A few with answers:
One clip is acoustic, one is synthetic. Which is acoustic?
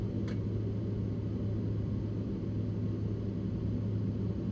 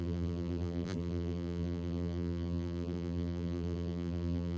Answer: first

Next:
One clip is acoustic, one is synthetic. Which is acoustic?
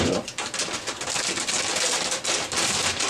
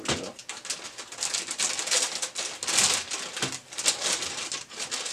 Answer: second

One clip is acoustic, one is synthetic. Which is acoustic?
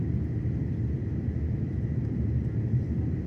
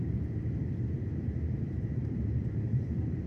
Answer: first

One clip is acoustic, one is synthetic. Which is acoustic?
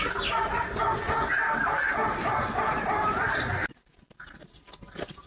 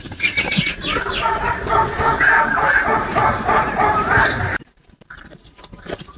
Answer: first